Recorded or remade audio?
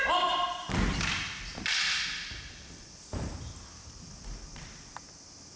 recorded